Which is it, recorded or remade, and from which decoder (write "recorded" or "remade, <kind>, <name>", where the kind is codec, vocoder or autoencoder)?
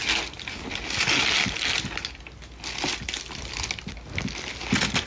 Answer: recorded